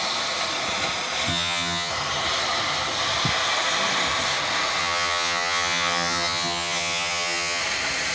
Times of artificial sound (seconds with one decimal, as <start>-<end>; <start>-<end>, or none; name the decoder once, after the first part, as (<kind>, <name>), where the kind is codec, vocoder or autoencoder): 1.3-1.9 (vocoder, HiFi-GAN); 4.8-7.6